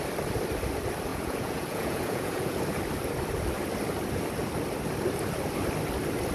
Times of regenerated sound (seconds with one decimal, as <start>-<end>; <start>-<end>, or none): 1.1-2.6

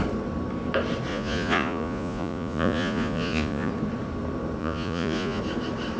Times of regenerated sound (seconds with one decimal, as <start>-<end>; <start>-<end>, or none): 1.1-3.7; 4.6-5.4

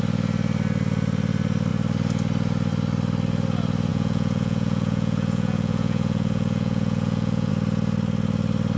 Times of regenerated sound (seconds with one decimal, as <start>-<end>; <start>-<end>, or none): 3.9-7.5

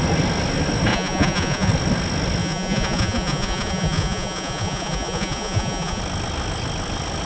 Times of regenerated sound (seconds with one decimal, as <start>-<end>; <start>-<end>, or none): 0.9-1.7; 2.4-6.0